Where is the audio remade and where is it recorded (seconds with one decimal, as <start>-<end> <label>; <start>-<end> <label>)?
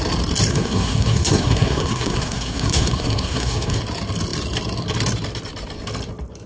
0.0-0.5 recorded; 0.5-3.8 remade; 3.8-6.5 recorded